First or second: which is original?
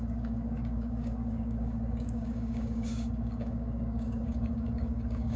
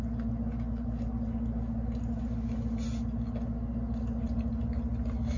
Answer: second